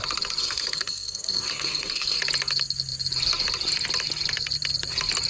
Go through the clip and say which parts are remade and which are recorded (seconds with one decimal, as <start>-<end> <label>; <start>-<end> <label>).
0.0-0.4 recorded; 0.4-2.2 remade; 2.2-5.3 recorded